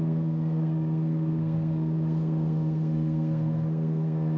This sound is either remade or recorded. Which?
remade